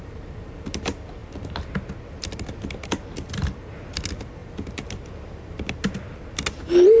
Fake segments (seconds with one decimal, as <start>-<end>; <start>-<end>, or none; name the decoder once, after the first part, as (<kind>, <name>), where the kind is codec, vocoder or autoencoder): none